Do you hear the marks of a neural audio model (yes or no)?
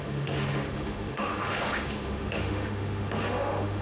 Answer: yes